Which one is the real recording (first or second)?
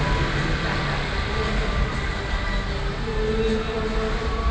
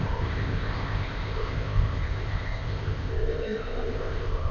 first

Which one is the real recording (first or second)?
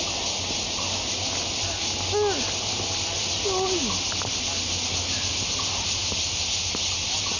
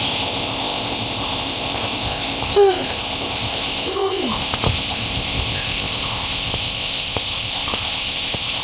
first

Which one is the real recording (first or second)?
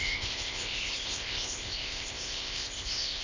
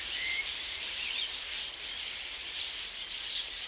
second